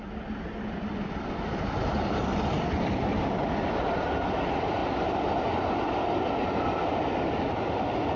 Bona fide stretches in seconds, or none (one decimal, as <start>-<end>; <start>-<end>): 4.8-7.2